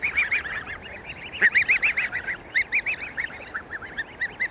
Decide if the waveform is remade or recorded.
recorded